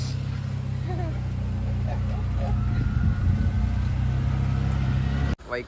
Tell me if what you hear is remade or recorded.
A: recorded